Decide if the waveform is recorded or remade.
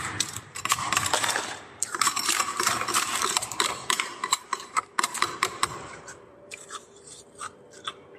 remade